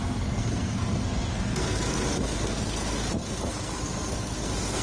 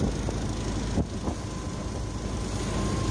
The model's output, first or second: first